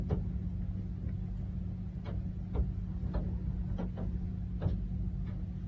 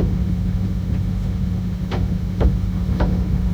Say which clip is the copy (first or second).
second